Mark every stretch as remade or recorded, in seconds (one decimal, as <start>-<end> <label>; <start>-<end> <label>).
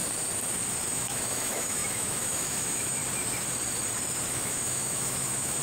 0.0-0.9 recorded; 0.9-3.0 remade; 3.0-4.3 recorded; 4.3-5.6 remade